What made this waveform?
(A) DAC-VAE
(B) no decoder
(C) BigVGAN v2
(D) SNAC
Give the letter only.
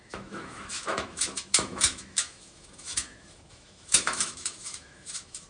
A